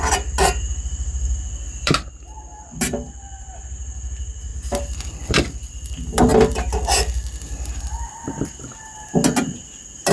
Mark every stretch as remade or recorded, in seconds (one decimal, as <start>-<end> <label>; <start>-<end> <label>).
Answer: 0.0-8.7 remade; 8.7-9.4 recorded; 9.4-10.1 remade